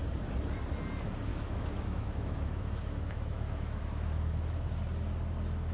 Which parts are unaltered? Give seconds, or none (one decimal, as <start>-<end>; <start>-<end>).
0.0-1.3; 4.7-5.7